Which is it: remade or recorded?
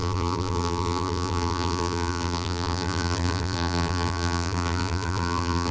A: remade